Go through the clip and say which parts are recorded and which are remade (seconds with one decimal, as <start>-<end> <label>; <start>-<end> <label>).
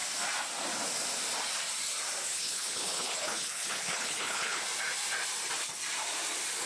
0.0-2.3 recorded; 2.3-4.6 remade; 4.6-6.7 recorded